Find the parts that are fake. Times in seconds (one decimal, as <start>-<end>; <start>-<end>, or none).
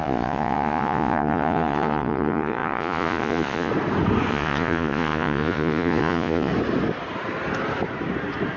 0.0-3.7; 4.3-6.5